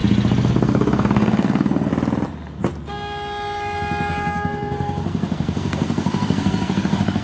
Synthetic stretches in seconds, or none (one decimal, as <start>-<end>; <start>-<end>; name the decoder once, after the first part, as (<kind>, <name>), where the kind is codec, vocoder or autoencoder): 0.5-1.9 (codec, SNAC); 4.1-7.2